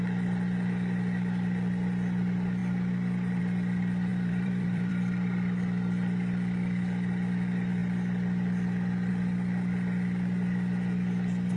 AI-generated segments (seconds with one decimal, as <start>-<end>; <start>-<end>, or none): 4.1-4.9